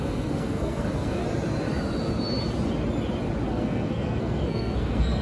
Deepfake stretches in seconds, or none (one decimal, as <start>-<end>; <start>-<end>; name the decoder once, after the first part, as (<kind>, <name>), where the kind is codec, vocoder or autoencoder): 0.0-1.2 (codec, SNAC); 3.5-5.2